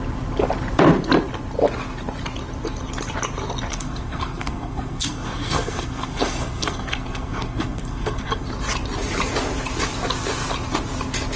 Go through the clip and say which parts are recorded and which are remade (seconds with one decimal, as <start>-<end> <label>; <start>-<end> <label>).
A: 0.0-3.7 recorded; 3.7-8.5 remade; 8.5-11.4 recorded